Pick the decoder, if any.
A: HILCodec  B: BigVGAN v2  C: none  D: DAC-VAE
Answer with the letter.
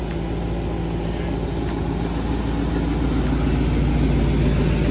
C